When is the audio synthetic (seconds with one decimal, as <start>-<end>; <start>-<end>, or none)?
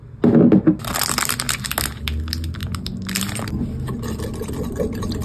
2.6-3.5